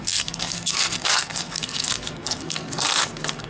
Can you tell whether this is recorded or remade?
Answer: remade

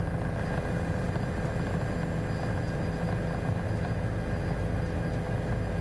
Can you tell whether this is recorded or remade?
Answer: recorded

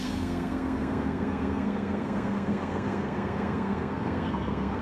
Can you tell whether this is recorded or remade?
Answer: remade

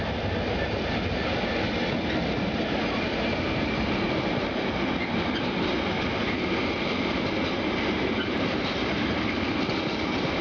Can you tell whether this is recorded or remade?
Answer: recorded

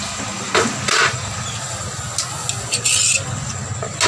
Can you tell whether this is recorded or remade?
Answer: recorded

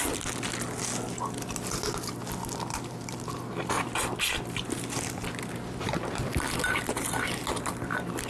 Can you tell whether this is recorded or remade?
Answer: recorded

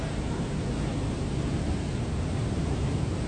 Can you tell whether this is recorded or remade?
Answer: recorded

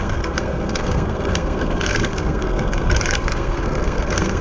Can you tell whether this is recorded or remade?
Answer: remade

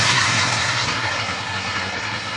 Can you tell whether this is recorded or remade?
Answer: remade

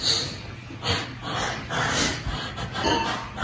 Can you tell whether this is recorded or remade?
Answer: recorded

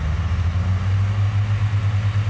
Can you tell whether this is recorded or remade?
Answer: recorded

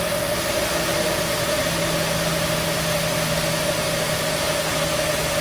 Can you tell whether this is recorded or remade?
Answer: recorded